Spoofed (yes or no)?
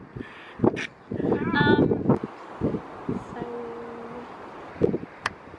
no